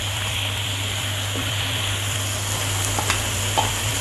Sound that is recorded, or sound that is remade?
remade